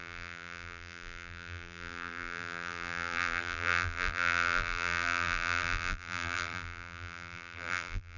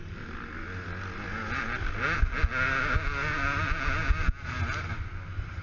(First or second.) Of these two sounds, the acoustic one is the second